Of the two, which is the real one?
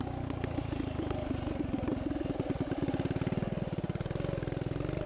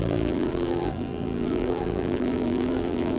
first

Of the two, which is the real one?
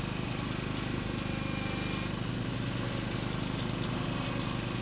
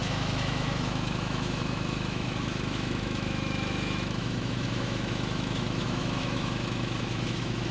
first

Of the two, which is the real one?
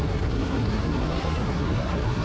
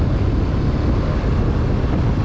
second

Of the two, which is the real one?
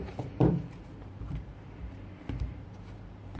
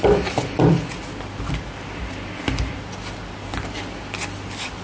second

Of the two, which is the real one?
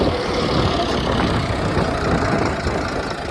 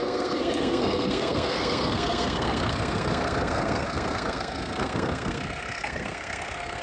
first